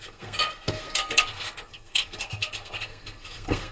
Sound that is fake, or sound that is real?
fake